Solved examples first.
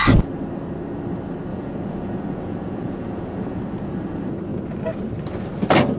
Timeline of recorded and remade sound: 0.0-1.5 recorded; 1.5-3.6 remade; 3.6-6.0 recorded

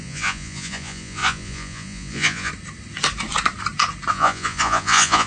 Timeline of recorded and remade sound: 0.0-2.5 remade; 2.5-4.1 recorded; 4.1-5.3 remade

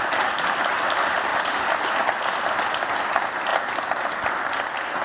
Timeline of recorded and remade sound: 0.0-5.0 recorded

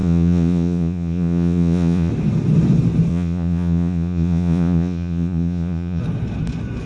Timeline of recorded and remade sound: 0.0-2.1 remade; 2.1-3.1 recorded; 3.1-6.0 remade; 6.0-6.9 recorded

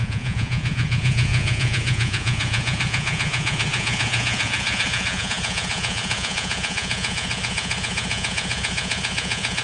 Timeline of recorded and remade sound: 0.0-9.6 remade

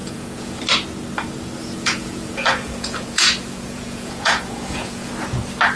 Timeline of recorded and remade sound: 0.0-0.6 remade; 0.6-1.6 recorded; 1.6-5.1 remade; 5.1-5.8 recorded